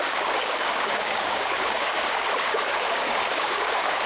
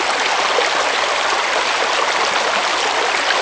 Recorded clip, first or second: second